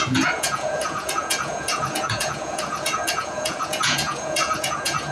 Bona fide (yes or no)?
no